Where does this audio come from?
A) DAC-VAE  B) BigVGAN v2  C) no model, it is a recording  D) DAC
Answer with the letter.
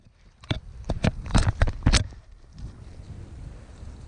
C